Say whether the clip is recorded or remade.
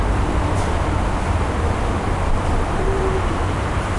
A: recorded